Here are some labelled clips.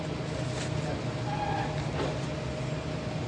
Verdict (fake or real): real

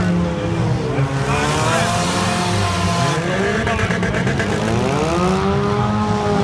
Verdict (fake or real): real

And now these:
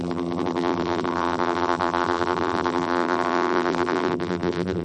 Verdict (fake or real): fake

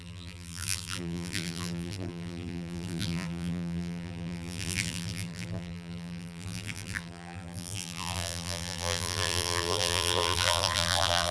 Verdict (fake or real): fake